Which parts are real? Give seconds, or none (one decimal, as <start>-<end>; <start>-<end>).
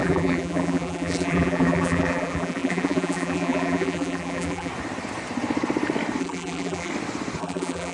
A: 4.7-6.2; 6.9-7.4